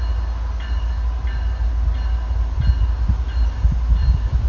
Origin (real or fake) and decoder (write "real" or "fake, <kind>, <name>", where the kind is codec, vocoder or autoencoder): real